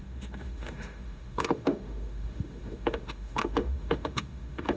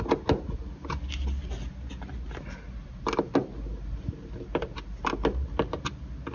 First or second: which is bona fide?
second